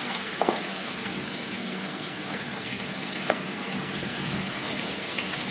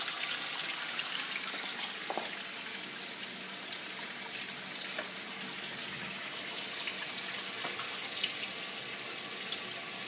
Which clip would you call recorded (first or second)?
second